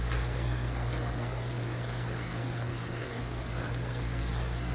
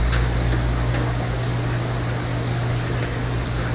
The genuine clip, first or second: second